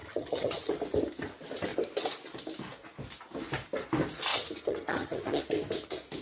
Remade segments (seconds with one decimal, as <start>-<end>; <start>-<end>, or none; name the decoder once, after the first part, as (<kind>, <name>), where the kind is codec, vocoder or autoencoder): 0.0-0.7 (vocoder, HiFi-GAN); 4.3-5.4